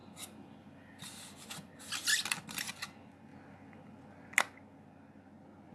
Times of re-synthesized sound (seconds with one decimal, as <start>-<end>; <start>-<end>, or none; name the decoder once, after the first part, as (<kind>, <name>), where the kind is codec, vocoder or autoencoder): none